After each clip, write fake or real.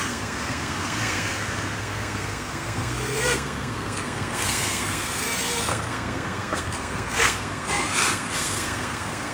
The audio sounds fake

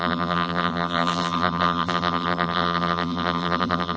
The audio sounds fake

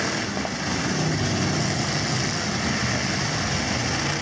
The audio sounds real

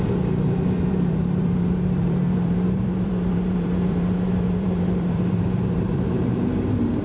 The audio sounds fake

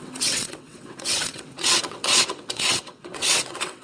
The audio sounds fake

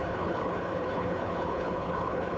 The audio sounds fake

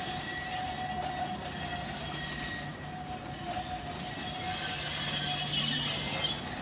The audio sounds real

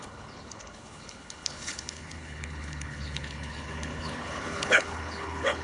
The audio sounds fake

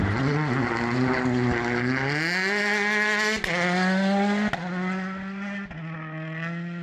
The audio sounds real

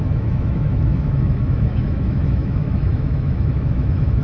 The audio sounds fake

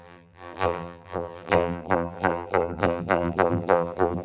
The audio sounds fake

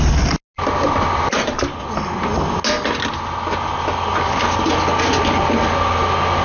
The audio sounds real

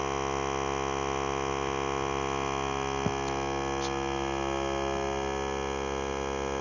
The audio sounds real